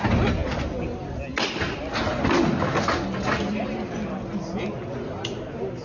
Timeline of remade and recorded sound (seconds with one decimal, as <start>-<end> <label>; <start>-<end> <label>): 0.0-5.8 recorded